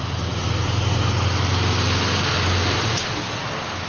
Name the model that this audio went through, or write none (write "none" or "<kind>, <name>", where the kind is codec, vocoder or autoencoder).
none